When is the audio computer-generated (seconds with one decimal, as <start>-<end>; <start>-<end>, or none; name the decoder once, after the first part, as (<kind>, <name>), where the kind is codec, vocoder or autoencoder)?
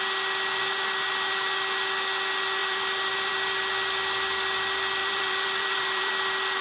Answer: 2.6-3.3 (vocoder, BigVGAN v2); 5.0-6.1